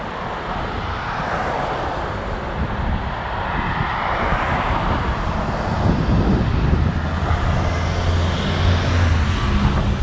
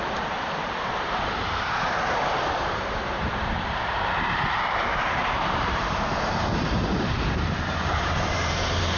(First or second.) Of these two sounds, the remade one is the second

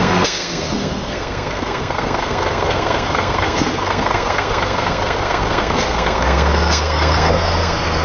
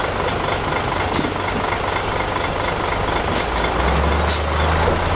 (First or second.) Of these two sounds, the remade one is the first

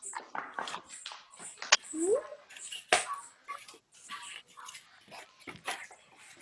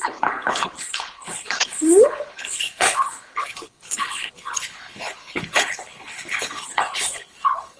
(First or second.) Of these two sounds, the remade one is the second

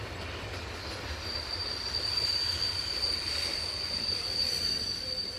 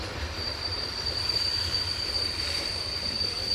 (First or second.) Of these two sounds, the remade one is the second